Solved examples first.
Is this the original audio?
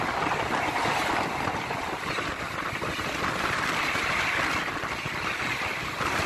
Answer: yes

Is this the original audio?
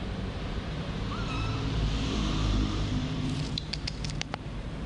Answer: no